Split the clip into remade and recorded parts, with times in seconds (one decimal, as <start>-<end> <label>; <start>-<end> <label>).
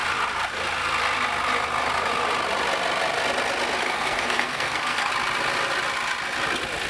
0.0-3.8 recorded; 3.8-5.1 remade; 5.1-6.9 recorded